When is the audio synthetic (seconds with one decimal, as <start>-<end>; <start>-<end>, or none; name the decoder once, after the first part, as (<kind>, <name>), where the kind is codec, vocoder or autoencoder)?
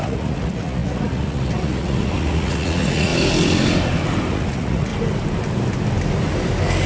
0.0-3.1 (vocoder, Vocos); 4.3-4.9